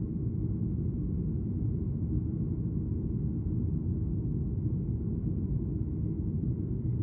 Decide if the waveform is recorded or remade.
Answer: recorded